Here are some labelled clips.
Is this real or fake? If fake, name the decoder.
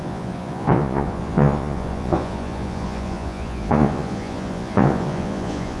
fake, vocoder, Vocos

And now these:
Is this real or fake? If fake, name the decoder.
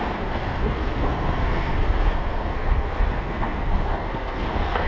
fake, codec, SNAC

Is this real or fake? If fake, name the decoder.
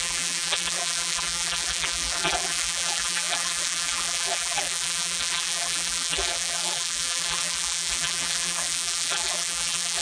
fake, vocoder, BigVGAN v2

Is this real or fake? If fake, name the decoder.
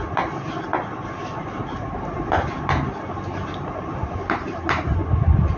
real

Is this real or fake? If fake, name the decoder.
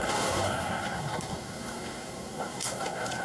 fake, codec, SNAC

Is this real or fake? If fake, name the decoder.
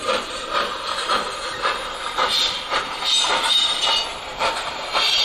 fake, vocoder, BigVGAN v2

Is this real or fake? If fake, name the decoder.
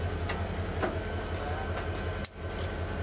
real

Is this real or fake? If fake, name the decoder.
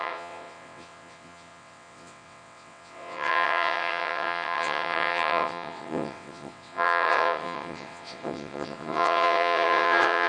fake, vocoder, WaveNeXt